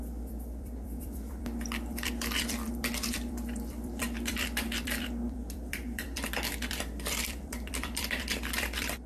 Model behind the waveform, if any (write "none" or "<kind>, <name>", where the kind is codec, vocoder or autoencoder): vocoder, BigVGAN v2